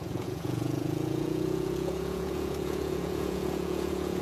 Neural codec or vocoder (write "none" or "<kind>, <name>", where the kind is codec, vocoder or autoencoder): vocoder, Vocos